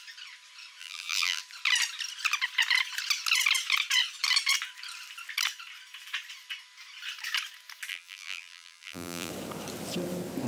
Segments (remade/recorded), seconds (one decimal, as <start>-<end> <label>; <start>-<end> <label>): 0.0-0.8 recorded; 0.8-1.4 remade; 1.4-7.9 recorded; 7.9-9.3 remade; 9.3-10.5 recorded